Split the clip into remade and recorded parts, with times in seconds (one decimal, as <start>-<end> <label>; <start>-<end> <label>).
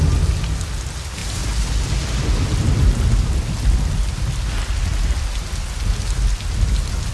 0.0-7.1 recorded